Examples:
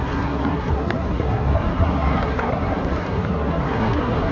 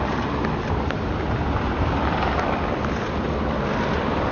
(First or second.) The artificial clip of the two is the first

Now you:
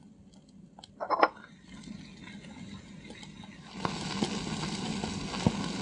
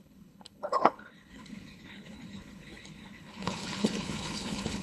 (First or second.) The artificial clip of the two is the second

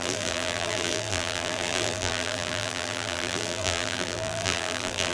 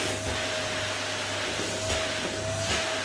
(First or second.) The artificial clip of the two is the first